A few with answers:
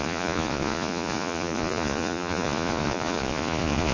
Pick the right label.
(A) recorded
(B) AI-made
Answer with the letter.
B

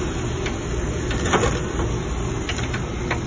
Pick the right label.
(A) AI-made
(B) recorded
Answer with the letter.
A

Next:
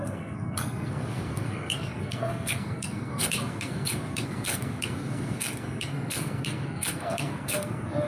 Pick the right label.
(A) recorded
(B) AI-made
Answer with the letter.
B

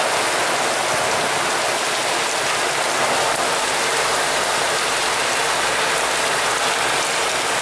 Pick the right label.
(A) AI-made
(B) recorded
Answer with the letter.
B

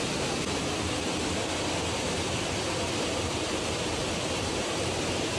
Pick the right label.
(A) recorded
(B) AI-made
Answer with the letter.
A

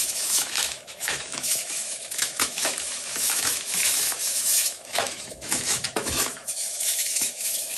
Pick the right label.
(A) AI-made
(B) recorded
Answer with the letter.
A